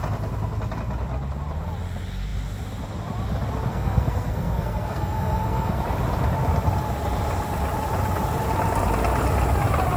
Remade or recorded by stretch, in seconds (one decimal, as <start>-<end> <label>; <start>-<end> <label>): 0.0-3.7 recorded; 3.7-5.8 remade; 5.8-10.0 recorded